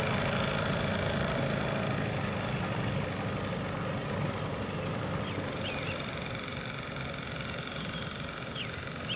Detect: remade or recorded recorded